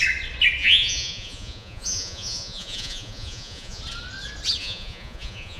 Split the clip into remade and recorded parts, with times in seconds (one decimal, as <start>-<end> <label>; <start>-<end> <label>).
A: 0.0-0.6 recorded; 0.6-3.8 remade; 3.8-4.6 recorded; 4.6-5.6 remade